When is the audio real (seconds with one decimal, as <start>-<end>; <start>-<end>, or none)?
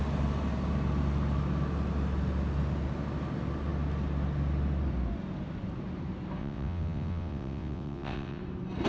0.0-6.4; 8.4-8.9